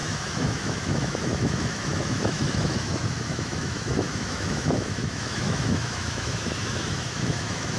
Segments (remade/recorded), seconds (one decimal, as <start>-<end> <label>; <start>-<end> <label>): 0.0-7.8 remade

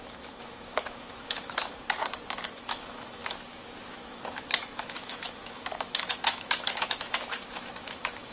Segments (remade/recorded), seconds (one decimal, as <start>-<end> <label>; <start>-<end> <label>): 0.0-1.7 remade; 1.7-2.5 recorded; 2.5-8.3 remade

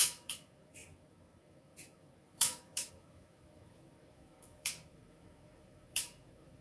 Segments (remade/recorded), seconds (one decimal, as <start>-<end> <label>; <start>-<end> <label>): 0.0-6.6 remade

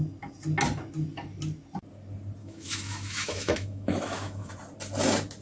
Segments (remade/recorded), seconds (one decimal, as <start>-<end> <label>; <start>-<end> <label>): 0.0-2.4 recorded; 2.4-4.5 remade; 4.5-5.4 recorded

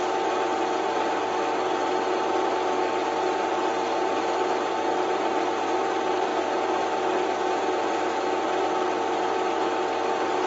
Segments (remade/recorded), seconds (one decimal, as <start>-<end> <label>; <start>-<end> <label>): 0.0-10.5 recorded

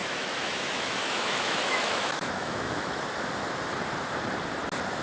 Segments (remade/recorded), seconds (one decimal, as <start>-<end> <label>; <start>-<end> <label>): 0.0-3.0 remade; 3.0-5.0 recorded